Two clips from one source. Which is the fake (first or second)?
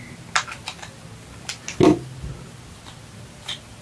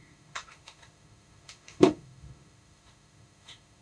second